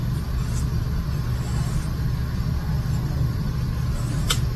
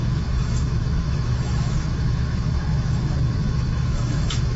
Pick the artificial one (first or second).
second